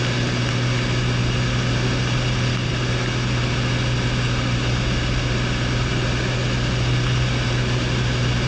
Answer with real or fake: real